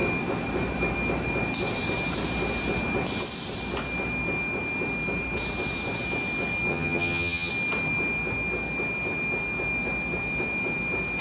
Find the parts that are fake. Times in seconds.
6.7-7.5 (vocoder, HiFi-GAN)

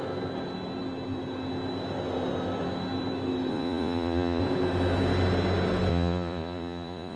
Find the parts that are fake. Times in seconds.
3.5-4.4 (vocoder, Vocos); 5.9-7.2